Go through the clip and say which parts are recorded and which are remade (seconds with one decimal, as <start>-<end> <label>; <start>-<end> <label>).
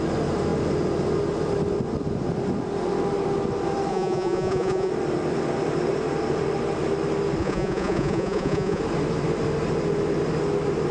0.0-3.9 recorded; 3.9-4.9 remade; 4.9-7.4 recorded; 7.4-8.8 remade; 8.8-10.9 recorded